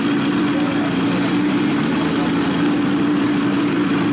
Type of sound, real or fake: real